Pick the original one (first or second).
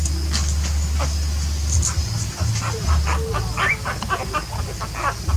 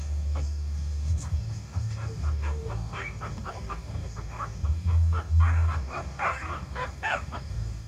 first